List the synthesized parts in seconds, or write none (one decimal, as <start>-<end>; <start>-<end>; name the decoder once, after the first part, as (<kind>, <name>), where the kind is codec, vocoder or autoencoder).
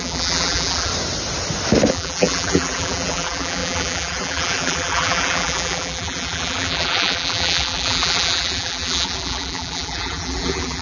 0.0-0.9 (vocoder, BigVGAN v2); 1.9-10.8